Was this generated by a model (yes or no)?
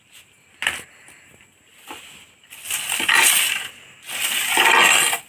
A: no